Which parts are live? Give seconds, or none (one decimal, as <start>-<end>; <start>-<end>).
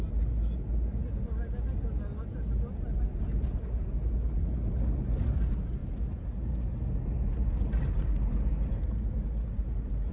0.0-10.1